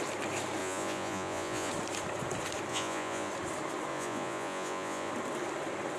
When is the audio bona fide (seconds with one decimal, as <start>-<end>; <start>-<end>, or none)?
0.0-0.6; 1.7-2.7; 3.3-3.9; 5.1-6.0